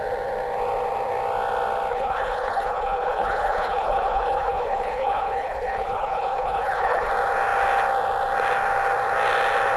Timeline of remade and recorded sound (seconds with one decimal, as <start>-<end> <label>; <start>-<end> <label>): 0.0-1.9 recorded; 1.9-7.1 remade; 7.1-9.8 recorded